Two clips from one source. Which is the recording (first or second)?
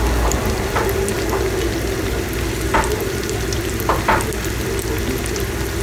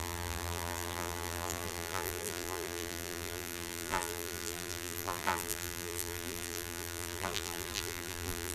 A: first